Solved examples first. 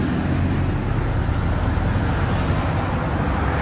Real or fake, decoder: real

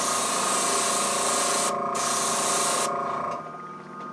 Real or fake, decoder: real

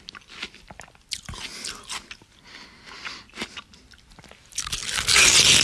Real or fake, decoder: real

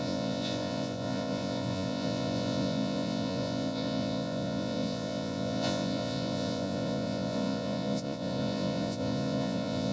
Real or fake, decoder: fake, vocoder, Vocos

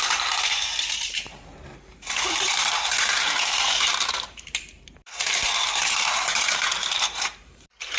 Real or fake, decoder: fake, vocoder, BigVGAN v2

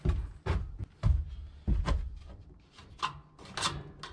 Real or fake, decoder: real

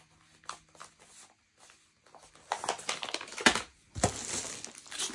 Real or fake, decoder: real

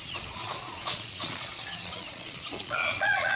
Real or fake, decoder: fake, vocoder, Vocos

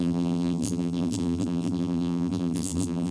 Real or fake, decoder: fake, vocoder, BigVGAN v2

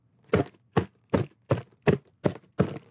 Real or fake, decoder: real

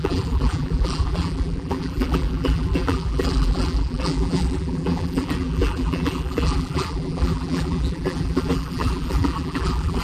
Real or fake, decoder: fake, vocoder, BigVGAN v2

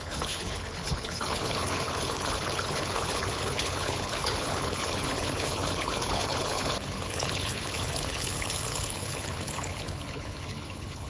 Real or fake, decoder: fake, codec, HILCodec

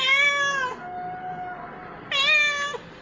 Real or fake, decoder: real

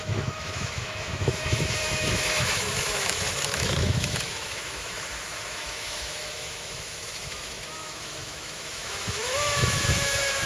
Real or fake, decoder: fake, autoencoder, DAC-VAE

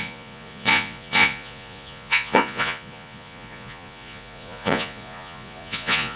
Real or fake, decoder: fake, vocoder, Vocos